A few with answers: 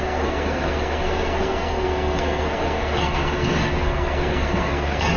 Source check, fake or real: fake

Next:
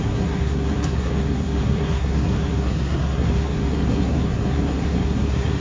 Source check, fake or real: fake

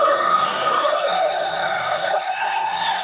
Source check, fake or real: fake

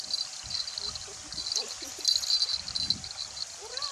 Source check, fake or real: real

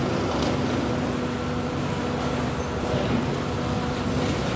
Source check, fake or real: real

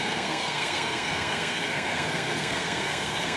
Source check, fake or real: fake